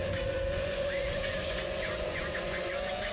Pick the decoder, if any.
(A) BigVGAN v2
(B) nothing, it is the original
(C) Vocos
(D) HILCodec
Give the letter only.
C